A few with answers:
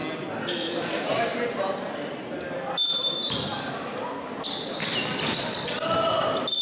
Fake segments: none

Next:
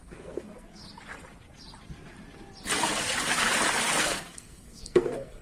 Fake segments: 0.0-0.8; 4.0-5.4

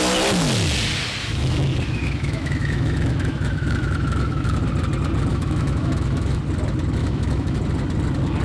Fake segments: 1.2-4.6; 5.3-6.4; 7.0-7.6

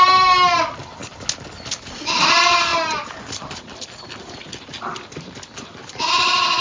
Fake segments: none

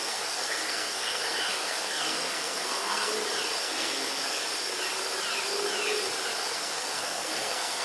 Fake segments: 0.0-3.1; 3.6-4.4; 6.5-7.8

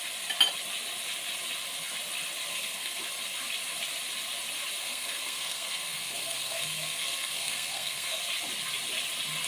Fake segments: 2.5-3.0; 4.8-8.2

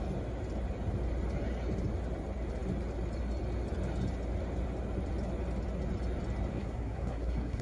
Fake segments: 6.5-7.6